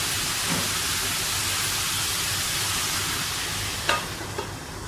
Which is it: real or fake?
real